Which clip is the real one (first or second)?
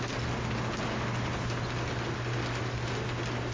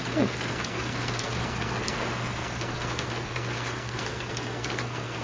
first